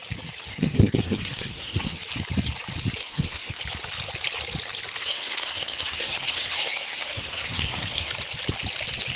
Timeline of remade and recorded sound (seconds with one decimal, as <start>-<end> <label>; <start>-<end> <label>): 0.0-0.5 recorded; 0.5-2.0 remade; 2.0-3.0 recorded; 3.0-3.6 remade; 3.6-5.0 recorded; 5.0-8.1 remade; 8.1-9.2 recorded